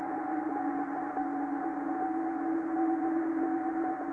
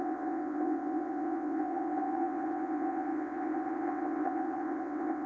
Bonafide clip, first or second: first